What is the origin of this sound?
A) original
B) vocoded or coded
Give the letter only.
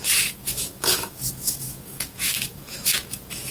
B